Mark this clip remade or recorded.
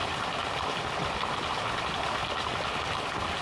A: recorded